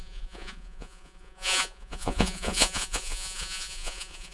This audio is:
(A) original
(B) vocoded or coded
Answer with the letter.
B